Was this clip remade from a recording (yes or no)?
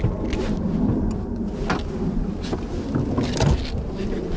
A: no